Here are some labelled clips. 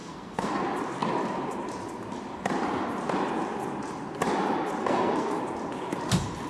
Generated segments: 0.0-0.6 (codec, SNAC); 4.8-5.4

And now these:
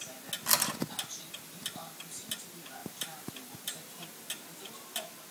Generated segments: 1.1-2.2 (vocoder, BigVGAN v2); 2.8-4.3

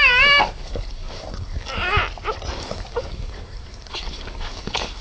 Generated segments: 0.0-2.0 (codec, DAC); 2.6-5.0

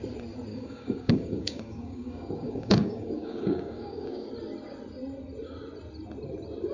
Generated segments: 0.5-4.3 (codec, DAC)